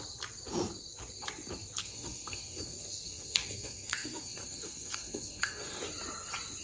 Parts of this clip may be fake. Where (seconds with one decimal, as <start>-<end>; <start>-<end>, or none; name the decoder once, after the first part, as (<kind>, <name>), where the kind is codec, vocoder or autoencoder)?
1.8-5.8 (codec, SNAC)